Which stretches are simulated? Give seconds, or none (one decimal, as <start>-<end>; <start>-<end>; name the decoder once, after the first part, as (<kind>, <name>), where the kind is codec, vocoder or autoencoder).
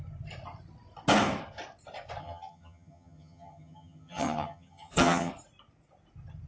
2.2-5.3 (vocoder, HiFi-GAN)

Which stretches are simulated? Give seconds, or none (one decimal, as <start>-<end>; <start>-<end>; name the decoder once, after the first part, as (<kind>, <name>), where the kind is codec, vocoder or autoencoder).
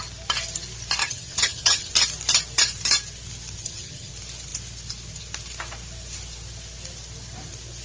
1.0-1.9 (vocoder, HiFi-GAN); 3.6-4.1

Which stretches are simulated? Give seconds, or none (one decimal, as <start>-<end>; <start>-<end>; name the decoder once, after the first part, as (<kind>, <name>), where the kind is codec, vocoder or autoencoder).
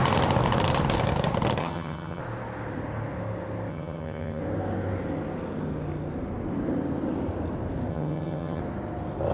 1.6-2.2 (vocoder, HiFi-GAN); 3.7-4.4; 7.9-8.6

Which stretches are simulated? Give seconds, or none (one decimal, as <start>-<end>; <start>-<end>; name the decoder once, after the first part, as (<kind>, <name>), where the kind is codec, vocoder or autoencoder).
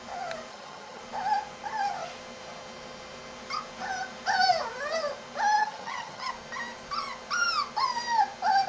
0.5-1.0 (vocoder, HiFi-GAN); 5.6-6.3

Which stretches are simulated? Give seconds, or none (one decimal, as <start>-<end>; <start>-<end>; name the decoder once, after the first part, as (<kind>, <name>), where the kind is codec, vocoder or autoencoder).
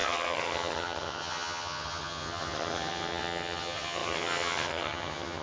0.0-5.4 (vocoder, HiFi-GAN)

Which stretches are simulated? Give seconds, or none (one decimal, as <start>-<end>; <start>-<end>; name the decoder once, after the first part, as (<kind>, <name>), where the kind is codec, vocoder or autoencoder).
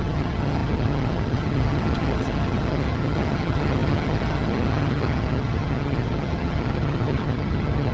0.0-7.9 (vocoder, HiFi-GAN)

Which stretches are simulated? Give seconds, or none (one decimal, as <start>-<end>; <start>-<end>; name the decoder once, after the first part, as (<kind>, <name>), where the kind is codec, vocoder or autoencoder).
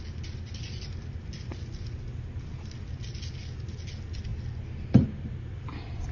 none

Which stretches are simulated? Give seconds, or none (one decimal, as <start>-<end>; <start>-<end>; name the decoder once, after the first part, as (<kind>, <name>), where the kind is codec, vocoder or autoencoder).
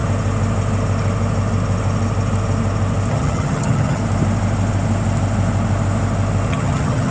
3.1-4.0 (vocoder, HiFi-GAN); 6.5-7.1